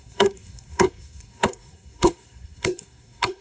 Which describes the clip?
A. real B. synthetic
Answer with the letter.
B